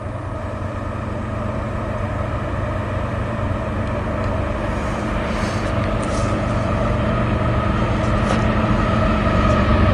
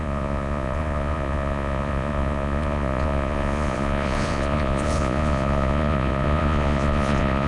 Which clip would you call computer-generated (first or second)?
second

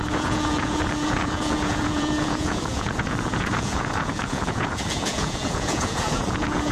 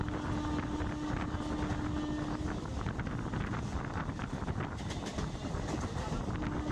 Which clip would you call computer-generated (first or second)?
first